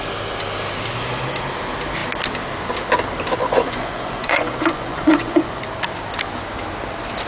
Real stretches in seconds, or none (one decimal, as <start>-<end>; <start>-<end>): 0.0-3.4; 5.6-7.3